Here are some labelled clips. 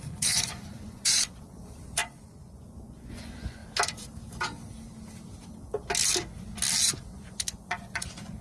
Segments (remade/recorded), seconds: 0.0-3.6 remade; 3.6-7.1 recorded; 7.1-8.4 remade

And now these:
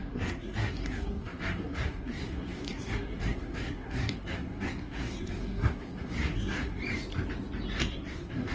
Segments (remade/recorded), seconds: 0.0-6.8 remade; 6.8-7.8 recorded; 7.8-8.5 remade

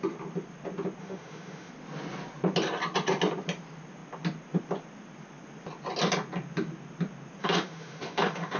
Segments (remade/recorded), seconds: 0.0-1.0 recorded; 1.0-1.7 remade; 1.7-7.4 recorded; 7.4-8.6 remade

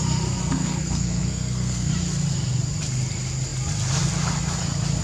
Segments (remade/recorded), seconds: 0.0-0.4 recorded; 0.4-1.9 remade; 1.9-5.0 recorded

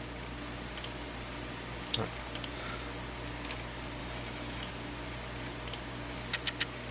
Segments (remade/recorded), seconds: 0.0-4.0 recorded; 4.0-4.7 remade; 4.7-6.9 recorded

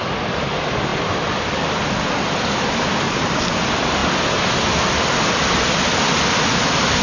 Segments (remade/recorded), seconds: 0.0-0.9 recorded; 0.9-1.6 remade; 1.6-7.0 recorded